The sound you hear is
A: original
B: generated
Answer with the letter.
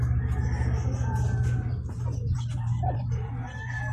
A